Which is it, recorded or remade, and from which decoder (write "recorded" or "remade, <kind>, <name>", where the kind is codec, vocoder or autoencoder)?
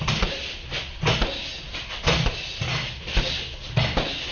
recorded